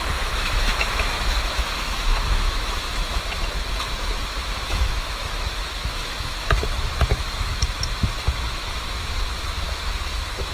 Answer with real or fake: fake